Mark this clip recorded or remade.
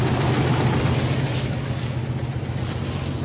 recorded